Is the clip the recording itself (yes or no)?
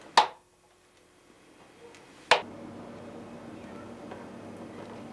yes